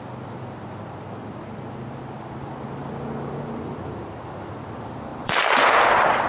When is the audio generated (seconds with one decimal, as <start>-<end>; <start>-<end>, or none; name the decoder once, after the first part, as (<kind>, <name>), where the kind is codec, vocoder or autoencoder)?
5.1-6.3 (vocoder, BigVGAN v2)